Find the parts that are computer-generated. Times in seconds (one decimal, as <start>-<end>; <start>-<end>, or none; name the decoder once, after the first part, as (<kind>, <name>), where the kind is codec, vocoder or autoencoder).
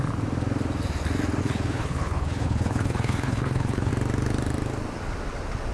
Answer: 1.4-3.9 (codec, HILCodec)